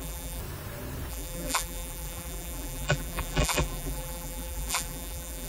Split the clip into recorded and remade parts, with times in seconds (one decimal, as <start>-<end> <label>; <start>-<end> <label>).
0.0-0.4 remade; 0.4-1.1 recorded; 1.1-5.5 remade